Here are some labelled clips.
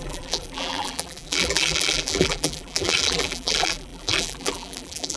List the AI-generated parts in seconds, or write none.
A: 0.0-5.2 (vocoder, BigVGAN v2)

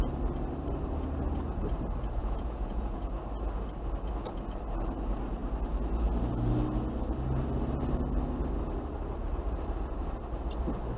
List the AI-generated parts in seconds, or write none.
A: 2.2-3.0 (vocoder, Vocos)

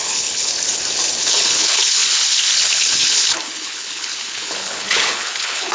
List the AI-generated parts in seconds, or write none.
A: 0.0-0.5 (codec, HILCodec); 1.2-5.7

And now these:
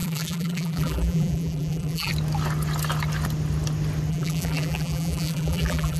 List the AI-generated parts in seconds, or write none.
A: 0.0-2.1 (vocoder, BigVGAN v2); 4.1-6.0